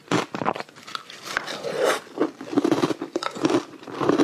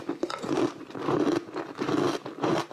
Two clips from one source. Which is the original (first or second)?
second